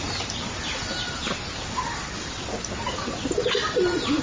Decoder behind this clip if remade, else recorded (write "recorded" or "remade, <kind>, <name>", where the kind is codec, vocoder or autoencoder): recorded